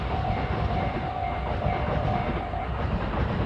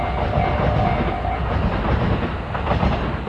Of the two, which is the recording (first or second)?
second